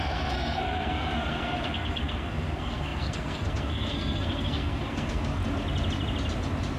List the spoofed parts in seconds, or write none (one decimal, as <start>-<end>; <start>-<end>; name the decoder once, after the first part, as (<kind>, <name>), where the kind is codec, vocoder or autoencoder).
0.0-5.4 (codec, SNAC)